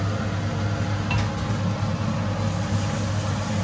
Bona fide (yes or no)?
yes